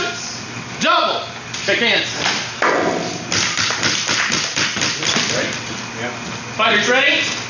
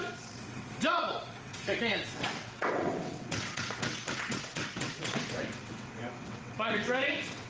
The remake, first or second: second